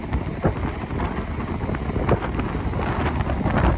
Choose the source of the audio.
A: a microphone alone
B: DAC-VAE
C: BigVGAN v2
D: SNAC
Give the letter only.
A